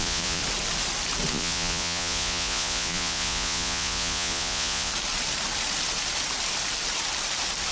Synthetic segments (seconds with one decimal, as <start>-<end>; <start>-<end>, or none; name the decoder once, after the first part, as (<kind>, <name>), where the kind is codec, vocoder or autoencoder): 0.0-0.4 (vocoder, Vocos); 1.3-4.9